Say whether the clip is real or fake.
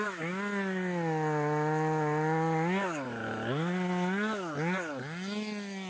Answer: real